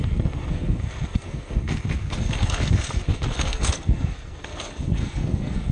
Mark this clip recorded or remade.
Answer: remade